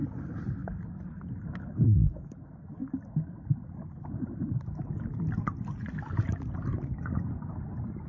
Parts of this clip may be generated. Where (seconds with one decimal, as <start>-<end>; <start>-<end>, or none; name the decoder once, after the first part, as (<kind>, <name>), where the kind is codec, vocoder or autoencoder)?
6.7-7.3 (vocoder, Vocos)